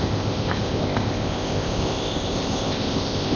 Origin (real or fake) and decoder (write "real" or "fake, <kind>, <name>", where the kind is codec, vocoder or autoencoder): fake, codec, ZipCodec